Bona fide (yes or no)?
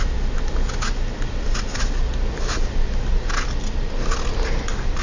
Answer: yes